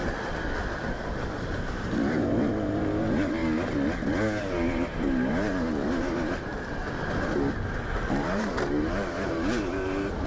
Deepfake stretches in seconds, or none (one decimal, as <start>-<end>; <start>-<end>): 0.8-3.4; 4.4-6.5; 8.1-10.3